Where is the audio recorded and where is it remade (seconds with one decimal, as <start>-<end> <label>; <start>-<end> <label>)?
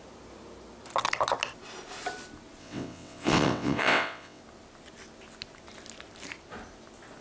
0.0-2.6 recorded; 2.6-4.4 remade; 4.4-7.2 recorded